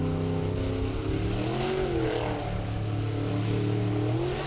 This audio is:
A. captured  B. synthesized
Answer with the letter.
A